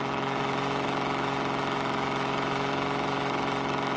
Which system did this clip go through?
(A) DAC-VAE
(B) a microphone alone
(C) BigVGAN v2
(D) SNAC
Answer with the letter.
A